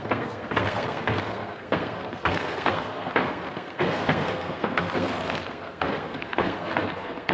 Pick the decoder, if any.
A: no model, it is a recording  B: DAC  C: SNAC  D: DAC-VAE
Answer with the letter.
C